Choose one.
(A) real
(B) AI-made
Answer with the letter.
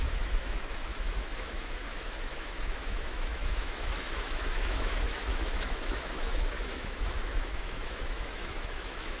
B